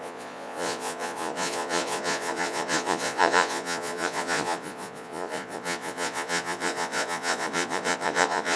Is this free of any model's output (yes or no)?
no